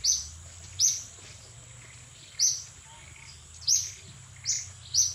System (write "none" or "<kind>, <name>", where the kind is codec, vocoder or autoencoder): none